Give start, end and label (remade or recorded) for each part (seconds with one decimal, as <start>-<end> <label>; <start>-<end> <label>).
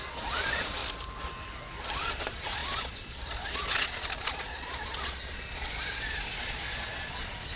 0.0-0.8 remade; 0.8-1.9 recorded; 1.9-7.6 remade